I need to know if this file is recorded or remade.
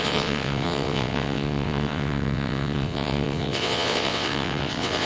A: remade